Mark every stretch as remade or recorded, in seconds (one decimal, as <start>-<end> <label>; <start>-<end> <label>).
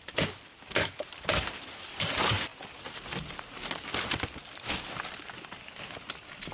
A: 0.0-6.5 recorded